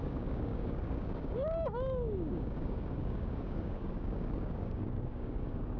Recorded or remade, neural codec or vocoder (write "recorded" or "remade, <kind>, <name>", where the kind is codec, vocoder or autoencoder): remade, codec, DAC